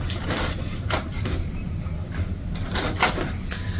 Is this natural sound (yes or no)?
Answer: yes